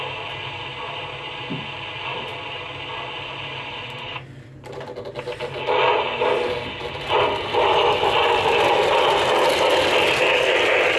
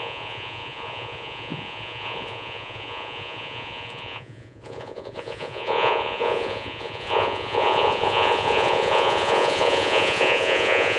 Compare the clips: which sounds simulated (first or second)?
second